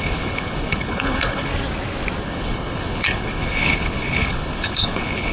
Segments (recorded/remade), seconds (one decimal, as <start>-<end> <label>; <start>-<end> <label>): 0.0-1.5 remade; 1.5-2.2 recorded; 2.2-5.3 remade